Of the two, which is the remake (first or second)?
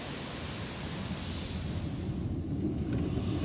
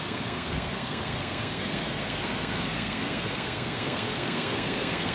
second